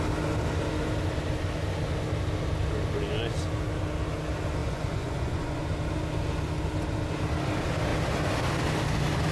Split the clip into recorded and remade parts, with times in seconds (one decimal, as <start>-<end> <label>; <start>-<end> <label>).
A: 0.0-4.6 recorded; 4.6-5.6 remade; 5.6-9.3 recorded